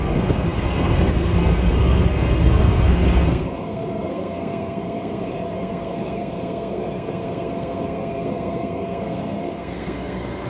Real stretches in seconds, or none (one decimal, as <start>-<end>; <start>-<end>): none